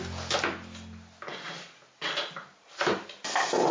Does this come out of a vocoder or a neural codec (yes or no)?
no